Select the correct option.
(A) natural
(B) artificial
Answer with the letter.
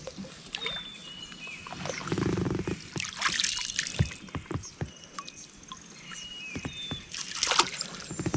A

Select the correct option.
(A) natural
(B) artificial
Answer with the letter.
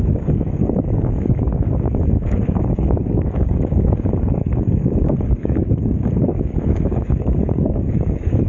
B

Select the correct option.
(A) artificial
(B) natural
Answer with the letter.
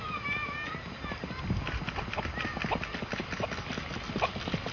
B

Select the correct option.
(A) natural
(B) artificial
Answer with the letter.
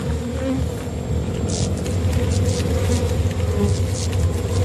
A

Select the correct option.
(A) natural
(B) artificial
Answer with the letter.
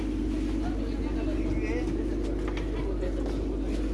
A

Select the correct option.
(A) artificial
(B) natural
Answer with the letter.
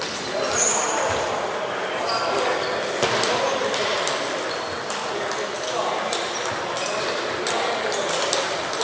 B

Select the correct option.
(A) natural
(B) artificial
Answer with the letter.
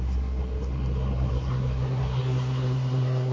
B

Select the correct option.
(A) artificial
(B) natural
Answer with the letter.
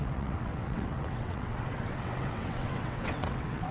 A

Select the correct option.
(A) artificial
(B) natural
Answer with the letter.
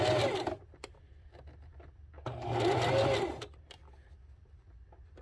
B